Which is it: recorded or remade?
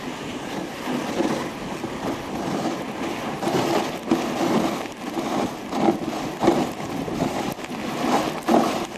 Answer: recorded